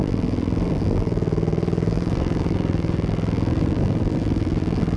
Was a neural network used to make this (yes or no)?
yes